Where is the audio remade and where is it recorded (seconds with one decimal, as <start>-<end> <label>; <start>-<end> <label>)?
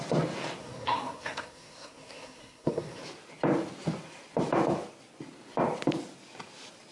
0.0-0.6 recorded; 0.6-3.0 remade; 3.0-6.9 recorded